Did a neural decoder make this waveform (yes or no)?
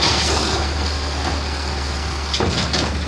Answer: yes